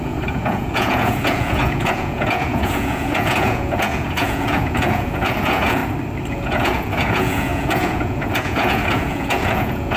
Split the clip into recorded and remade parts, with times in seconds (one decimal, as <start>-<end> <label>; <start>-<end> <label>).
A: 0.0-5.8 remade; 5.8-6.3 recorded; 6.3-10.0 remade